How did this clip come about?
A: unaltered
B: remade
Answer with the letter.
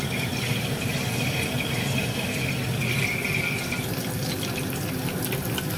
A